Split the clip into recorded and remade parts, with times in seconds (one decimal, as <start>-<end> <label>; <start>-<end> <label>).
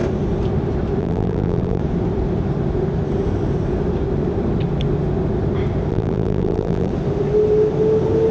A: 0.0-1.0 recorded; 1.0-1.8 remade; 1.8-5.9 recorded; 5.9-6.9 remade; 6.9-8.3 recorded